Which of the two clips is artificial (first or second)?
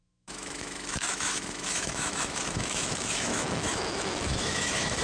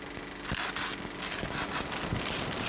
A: first